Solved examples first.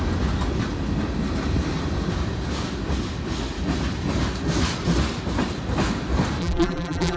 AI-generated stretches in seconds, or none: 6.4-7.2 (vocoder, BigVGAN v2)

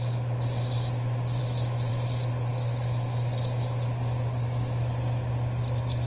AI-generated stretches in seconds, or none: 1.4-1.9 (autoencoder, DAC-VAE); 2.5-4.9

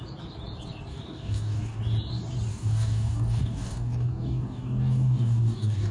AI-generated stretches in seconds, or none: 0.9-1.8 (codec, DAC); 2.5-5.9

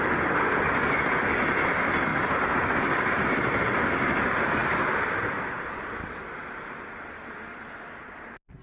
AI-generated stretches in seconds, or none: none